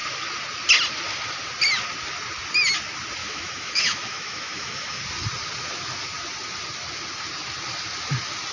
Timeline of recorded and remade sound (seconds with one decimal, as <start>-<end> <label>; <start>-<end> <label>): 0.0-3.2 recorded; 3.2-5.0 remade; 5.0-8.5 recorded